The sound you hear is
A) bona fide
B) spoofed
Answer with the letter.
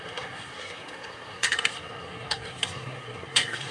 B